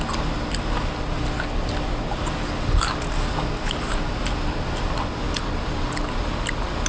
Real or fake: real